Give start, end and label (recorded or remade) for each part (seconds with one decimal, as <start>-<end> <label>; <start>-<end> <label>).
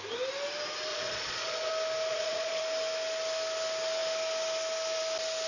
0.0-0.9 recorded; 0.9-1.7 remade; 1.7-2.1 recorded; 2.1-2.6 remade; 2.6-5.5 recorded